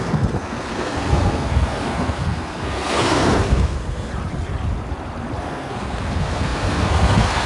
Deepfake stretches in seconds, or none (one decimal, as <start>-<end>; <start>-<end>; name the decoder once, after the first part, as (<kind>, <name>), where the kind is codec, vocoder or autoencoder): 0.0-4.1 (codec, SNAC); 5.4-7.5